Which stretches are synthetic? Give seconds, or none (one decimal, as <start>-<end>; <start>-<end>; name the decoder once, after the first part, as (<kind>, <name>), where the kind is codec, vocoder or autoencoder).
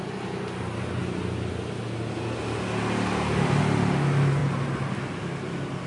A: none